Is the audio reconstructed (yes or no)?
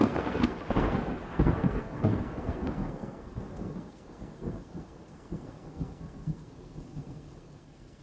yes